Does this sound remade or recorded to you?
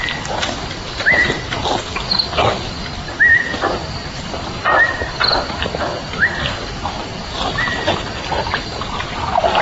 recorded